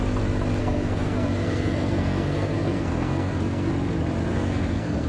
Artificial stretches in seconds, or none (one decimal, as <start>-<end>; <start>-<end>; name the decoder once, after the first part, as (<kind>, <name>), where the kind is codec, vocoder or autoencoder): 0.6-3.7 (codec, SNAC); 4.3-5.1